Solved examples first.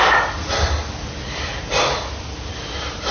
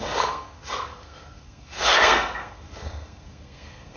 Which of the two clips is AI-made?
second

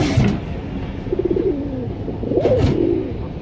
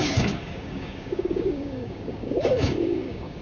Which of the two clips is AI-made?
second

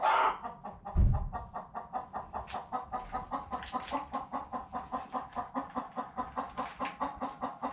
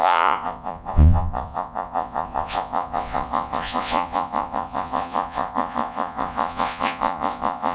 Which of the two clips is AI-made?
second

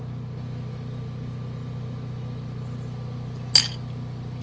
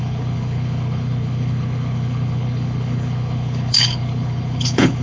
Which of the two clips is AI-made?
second